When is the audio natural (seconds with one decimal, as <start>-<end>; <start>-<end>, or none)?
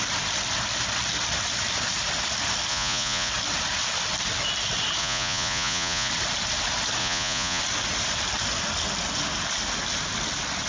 0.0-2.7; 3.3-5.0; 6.1-7.0; 7.6-10.7